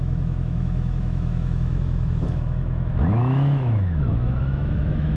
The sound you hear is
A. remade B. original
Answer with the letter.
A